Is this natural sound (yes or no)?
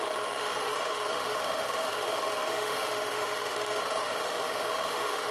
no